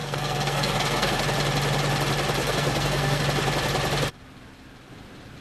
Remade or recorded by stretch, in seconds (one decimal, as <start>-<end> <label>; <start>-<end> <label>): 0.0-1.2 remade; 1.2-2.4 recorded; 2.4-3.2 remade; 3.2-5.4 recorded